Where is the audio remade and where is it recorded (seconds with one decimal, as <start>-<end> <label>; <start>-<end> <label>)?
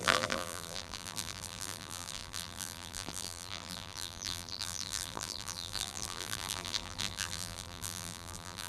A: 0.0-8.7 remade